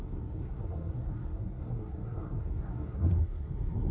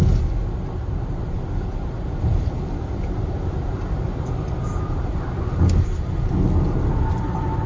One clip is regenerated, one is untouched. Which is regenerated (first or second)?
first